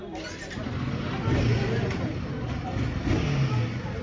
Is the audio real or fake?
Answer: real